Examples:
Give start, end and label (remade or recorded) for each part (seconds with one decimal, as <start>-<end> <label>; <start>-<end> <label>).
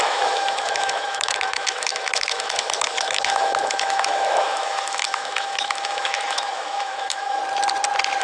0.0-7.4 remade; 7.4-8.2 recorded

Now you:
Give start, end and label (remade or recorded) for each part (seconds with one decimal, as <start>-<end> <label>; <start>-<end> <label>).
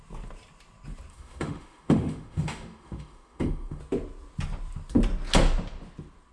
0.0-1.1 recorded; 1.1-3.8 remade; 3.8-6.3 recorded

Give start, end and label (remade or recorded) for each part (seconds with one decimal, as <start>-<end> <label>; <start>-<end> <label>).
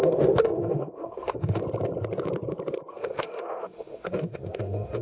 0.0-1.6 remade; 1.6-2.9 recorded; 2.9-5.0 remade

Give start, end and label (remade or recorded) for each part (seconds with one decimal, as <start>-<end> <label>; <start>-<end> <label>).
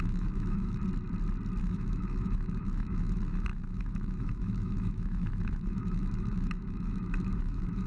0.0-0.8 remade; 0.8-1.6 recorded; 1.6-7.9 remade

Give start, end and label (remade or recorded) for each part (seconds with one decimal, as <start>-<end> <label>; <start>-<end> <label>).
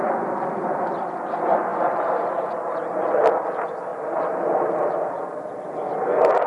0.0-6.5 recorded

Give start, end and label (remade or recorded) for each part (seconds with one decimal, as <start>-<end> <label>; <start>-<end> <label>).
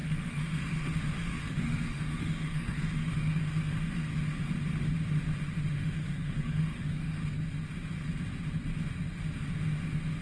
0.0-4.1 remade; 4.1-5.7 recorded; 5.7-7.2 remade; 7.2-10.2 recorded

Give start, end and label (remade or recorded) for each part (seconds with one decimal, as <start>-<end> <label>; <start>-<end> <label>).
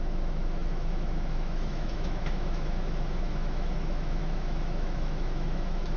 0.0-6.0 remade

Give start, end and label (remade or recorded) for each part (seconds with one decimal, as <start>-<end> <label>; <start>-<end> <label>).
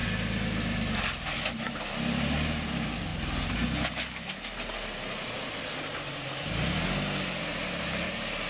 0.0-8.5 recorded